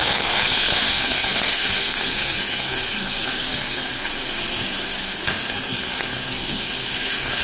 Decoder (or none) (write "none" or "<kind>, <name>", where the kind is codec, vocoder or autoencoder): codec, SNAC